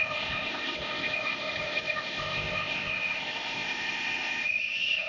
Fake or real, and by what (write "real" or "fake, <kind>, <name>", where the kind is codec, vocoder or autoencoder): fake, codec, ZipCodec